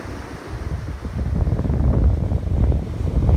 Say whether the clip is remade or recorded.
recorded